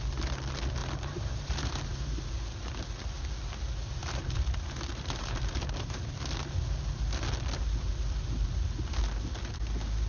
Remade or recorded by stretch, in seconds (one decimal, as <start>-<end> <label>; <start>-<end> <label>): 0.0-0.8 recorded; 0.8-2.3 remade; 2.3-4.0 recorded; 4.0-6.1 remade; 6.1-10.1 recorded